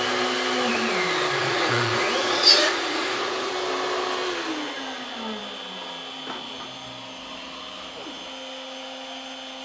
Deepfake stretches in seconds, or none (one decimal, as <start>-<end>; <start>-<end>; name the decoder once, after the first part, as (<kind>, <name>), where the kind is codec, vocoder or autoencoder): 1.4-3.5 (vocoder, Vocos)